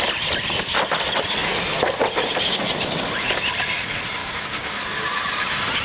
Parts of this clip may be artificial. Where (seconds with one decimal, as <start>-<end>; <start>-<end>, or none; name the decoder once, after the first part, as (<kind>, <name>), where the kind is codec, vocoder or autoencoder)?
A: 4.2-4.8 (codec, DAC)

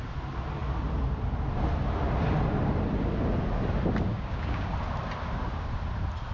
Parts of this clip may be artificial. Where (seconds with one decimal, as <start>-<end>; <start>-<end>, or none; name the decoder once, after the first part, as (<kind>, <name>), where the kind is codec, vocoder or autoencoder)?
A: 4.1-4.7 (codec, DAC)

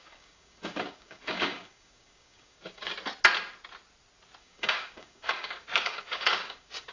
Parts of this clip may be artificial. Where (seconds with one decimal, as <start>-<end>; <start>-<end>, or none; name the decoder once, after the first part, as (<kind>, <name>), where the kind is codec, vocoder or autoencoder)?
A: 0.0-2.9 (codec, DAC); 4.4-6.9

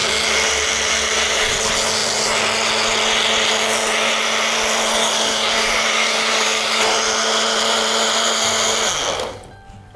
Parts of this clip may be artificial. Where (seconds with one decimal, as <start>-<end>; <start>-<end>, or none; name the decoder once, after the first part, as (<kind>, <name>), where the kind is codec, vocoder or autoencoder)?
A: 5.0-6.8 (codec, DAC)